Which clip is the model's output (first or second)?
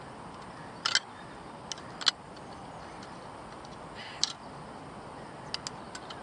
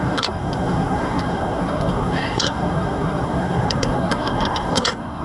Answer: second